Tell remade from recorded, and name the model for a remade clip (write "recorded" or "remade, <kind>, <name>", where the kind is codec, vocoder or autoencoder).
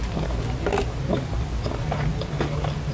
recorded